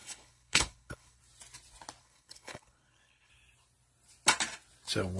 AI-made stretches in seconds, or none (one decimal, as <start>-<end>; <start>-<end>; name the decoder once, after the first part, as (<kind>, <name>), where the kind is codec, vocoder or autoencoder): 0.0-1.2 (codec, HILCodec); 2.0-3.3